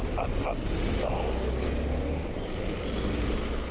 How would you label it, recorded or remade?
recorded